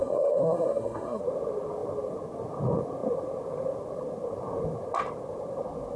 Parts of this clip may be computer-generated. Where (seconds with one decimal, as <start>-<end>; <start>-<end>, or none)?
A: 0.0-1.2